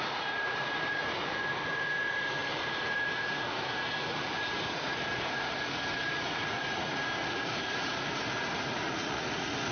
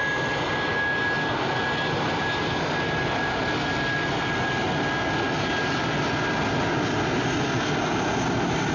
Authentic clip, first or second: second